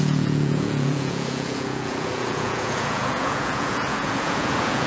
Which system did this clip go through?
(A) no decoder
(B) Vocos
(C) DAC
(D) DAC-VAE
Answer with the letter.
B